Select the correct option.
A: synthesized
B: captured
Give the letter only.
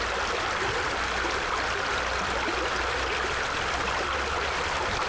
B